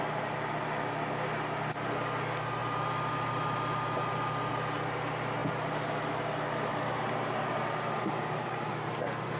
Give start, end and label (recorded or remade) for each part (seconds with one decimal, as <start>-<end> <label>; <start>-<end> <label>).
0.0-9.4 recorded